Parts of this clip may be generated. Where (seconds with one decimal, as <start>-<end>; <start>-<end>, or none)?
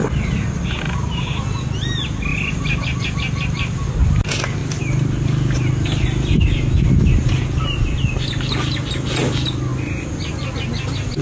none